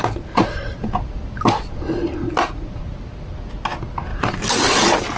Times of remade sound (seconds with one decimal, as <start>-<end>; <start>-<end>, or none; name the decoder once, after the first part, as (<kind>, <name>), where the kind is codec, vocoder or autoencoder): none